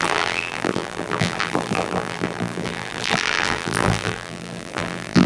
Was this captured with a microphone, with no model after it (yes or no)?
no